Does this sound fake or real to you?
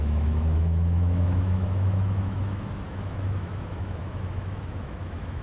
fake